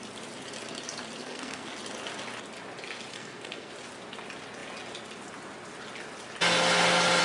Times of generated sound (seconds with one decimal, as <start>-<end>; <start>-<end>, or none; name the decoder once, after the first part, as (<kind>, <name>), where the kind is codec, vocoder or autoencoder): 1.2-1.7 (codec, SNAC); 3.1-3.7